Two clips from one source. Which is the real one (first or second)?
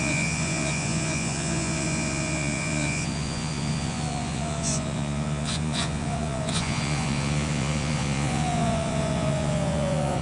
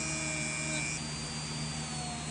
second